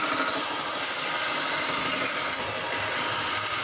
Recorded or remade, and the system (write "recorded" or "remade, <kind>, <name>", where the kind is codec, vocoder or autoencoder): recorded